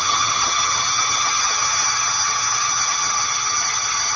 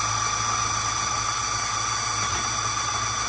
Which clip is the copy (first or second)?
first